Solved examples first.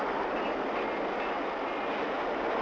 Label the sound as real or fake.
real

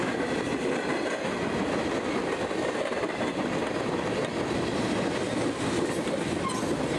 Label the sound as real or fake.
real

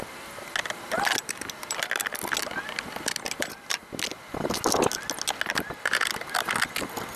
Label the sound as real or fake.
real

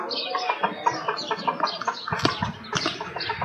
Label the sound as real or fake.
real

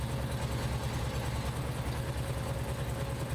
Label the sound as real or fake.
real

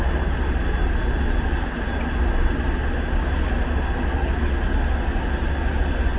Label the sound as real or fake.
real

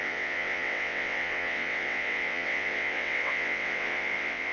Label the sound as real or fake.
fake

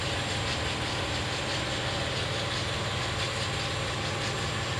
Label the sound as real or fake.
real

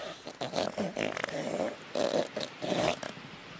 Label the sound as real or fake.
real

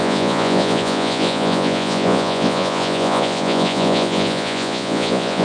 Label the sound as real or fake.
fake